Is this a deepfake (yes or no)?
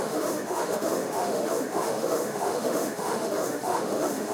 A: yes